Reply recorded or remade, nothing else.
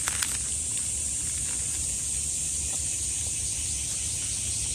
recorded